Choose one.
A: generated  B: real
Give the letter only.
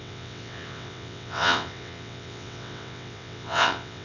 A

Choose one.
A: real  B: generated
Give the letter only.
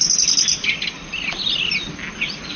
A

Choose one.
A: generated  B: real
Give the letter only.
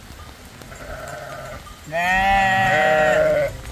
B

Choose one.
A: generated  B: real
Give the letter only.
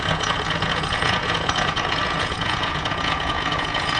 A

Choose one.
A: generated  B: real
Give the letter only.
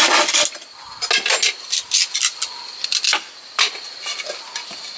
B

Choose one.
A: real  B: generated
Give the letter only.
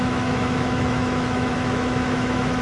B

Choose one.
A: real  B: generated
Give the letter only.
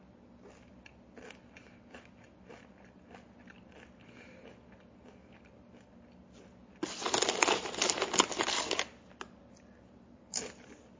A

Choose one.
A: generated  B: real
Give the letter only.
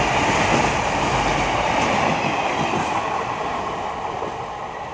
B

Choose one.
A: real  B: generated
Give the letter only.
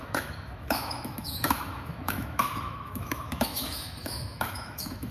B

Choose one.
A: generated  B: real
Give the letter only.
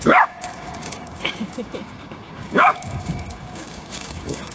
A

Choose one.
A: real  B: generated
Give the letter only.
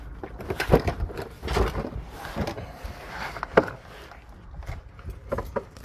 B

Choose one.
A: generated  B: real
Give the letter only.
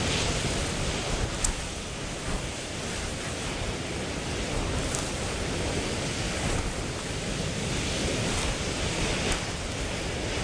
B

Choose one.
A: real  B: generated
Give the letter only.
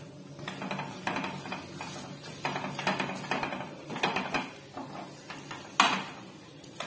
A